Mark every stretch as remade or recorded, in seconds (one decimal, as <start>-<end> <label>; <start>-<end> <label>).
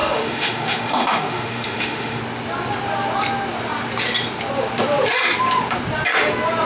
0.0-2.2 remade; 2.2-6.6 recorded